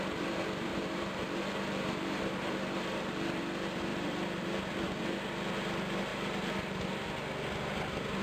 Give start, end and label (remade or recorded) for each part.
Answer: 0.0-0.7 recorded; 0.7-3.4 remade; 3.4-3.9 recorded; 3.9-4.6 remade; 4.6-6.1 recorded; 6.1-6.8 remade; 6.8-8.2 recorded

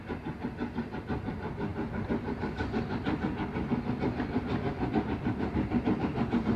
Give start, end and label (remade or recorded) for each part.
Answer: 0.0-6.6 recorded